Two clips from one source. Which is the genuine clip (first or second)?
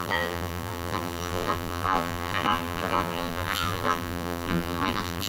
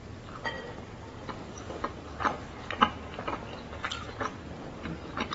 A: second